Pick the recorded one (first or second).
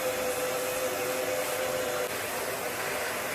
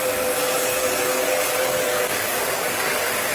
first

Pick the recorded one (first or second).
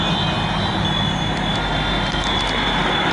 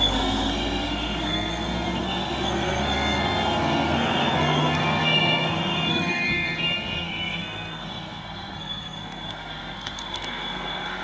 first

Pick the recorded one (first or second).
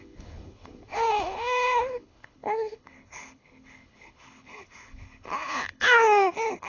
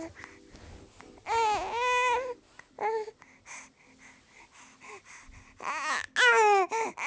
second